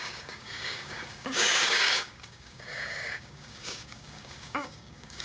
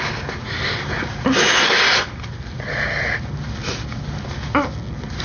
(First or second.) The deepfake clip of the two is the first